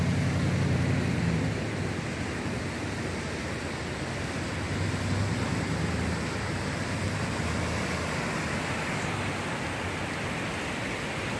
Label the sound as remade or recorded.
recorded